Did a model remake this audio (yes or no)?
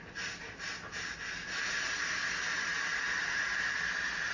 no